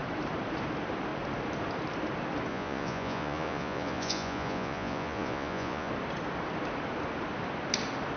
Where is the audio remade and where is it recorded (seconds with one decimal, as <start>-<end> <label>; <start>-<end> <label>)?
0.0-2.5 recorded; 2.5-5.9 remade; 5.9-8.2 recorded